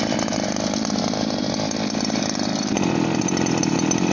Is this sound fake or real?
fake